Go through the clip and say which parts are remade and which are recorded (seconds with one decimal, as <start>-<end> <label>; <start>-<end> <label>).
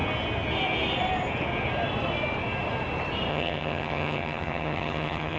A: 0.0-3.3 recorded; 3.3-5.4 remade